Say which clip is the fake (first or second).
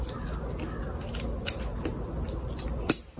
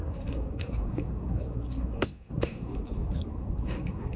second